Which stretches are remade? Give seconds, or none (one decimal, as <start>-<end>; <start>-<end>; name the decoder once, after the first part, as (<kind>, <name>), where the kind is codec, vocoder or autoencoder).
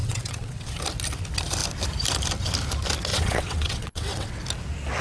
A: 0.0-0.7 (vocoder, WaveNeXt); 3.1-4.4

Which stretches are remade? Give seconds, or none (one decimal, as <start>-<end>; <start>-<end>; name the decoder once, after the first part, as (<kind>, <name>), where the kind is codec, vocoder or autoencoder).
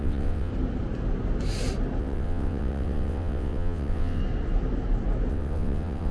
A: 0.0-0.5 (vocoder, WaveNeXt); 2.0-4.2; 5.3-6.1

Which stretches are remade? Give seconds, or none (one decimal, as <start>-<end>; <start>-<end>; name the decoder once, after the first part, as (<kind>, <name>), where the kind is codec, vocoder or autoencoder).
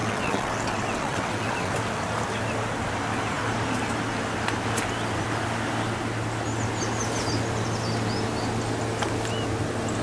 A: 0.0-1.7 (vocoder, WaveNeXt)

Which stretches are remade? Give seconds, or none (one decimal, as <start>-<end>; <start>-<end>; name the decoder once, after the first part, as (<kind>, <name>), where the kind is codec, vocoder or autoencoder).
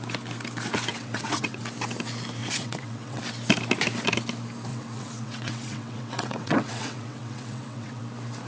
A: 0.9-1.6 (vocoder, WaveNeXt); 2.4-3.2; 4.7-8.0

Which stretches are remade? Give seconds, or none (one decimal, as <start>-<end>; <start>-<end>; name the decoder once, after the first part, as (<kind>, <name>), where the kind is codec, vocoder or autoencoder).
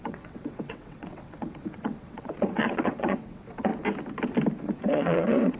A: 0.0-3.7 (vocoder, WaveNeXt); 4.6-5.6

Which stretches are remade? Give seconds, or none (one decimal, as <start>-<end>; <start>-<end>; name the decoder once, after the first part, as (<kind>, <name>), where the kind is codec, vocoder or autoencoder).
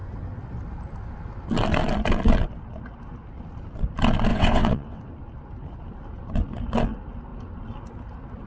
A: 4.3-5.0 (vocoder, WaveNeXt)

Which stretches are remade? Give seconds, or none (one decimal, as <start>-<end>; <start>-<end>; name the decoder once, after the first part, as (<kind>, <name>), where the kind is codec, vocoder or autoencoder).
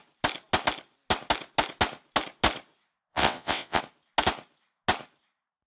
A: 3.1-3.8 (vocoder, WaveNeXt)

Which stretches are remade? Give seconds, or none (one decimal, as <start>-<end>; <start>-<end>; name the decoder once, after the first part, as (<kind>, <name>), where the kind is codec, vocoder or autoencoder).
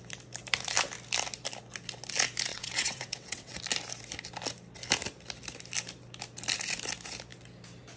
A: 2.5-3.6 (vocoder, WaveNeXt)